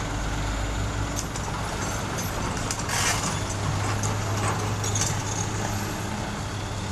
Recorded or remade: recorded